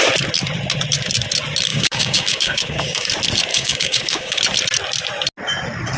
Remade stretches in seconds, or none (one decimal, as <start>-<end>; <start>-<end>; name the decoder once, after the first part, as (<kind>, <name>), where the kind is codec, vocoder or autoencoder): 1.7-3.1 (codec, DAC); 3.5-4.4